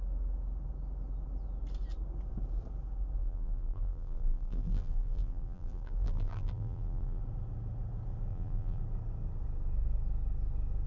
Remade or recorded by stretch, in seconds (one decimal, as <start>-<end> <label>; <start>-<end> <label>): 0.0-3.2 recorded; 3.2-7.2 remade; 7.2-8.3 recorded; 8.3-8.8 remade; 8.8-10.9 recorded